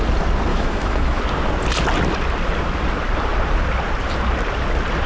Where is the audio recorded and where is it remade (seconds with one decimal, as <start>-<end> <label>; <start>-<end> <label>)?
0.0-0.5 recorded; 0.5-1.2 remade; 1.2-5.1 recorded